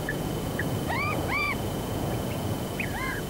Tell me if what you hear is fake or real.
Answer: fake